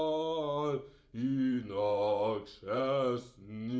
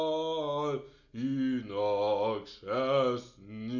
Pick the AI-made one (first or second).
first